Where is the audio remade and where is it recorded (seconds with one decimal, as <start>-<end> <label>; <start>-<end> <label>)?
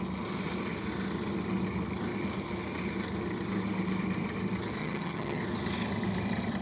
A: 0.0-4.8 recorded; 4.8-5.4 remade; 5.4-6.6 recorded